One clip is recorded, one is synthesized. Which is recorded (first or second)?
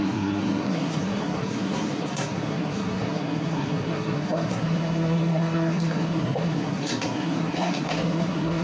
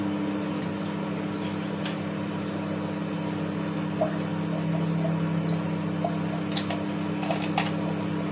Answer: second